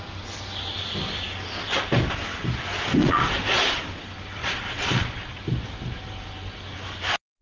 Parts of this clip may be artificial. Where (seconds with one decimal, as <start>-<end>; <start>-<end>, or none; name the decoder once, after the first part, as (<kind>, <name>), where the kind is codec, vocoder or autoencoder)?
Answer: 3.0-3.8 (vocoder, Vocos); 4.4-5.4

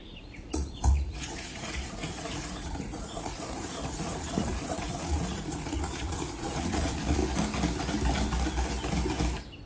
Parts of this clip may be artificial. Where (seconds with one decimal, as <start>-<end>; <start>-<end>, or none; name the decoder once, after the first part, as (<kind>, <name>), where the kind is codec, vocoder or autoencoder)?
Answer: 0.0-7.2 (vocoder, Vocos)

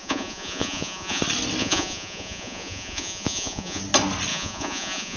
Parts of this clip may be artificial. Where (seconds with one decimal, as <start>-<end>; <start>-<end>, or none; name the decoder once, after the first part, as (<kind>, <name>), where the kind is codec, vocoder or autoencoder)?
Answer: 0.0-1.2 (vocoder, Vocos); 1.6-3.8; 4.3-5.2

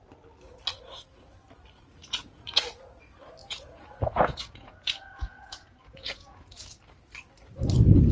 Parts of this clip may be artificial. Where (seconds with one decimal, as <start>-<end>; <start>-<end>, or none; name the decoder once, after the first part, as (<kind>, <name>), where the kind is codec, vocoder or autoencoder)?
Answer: 2.0-2.6 (vocoder, Vocos); 3.4-6.8

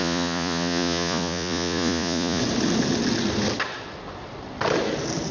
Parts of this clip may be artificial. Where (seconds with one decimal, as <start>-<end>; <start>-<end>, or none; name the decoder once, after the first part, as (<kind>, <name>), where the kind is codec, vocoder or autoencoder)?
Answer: 0.0-2.4 (vocoder, Vocos)

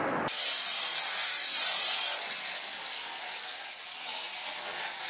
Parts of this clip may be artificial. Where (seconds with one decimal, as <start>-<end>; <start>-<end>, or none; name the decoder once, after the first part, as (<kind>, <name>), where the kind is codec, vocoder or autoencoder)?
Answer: 1.4-2.3 (vocoder, Vocos)